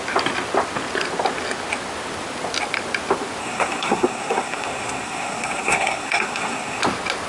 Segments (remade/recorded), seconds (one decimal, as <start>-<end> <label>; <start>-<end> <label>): 0.0-3.4 recorded; 3.4-6.8 remade; 6.8-7.3 recorded